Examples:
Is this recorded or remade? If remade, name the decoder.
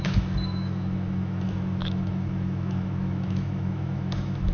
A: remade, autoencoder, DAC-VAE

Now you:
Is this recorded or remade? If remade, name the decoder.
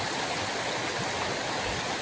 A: recorded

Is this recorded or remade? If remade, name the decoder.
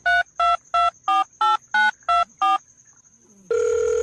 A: recorded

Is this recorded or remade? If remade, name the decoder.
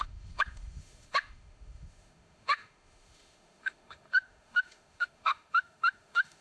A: remade, autoencoder, DAC-VAE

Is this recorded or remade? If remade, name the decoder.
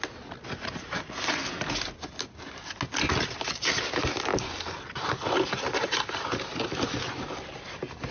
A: recorded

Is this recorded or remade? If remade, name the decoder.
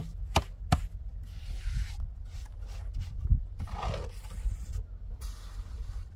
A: recorded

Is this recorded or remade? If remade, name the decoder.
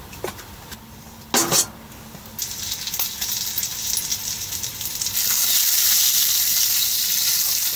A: recorded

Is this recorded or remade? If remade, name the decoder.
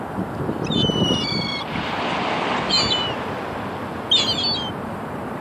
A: recorded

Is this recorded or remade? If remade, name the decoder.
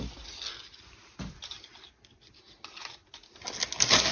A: recorded